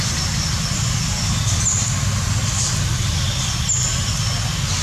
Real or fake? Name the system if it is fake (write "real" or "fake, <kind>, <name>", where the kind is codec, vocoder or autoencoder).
real